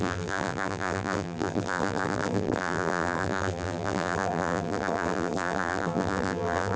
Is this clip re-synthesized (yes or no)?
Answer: yes